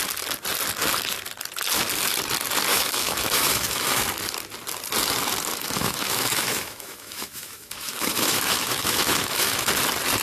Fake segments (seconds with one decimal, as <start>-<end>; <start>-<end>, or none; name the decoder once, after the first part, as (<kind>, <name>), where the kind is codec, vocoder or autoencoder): 2.7-4.0 (autoencoder, DAC-VAE); 5.5-9.7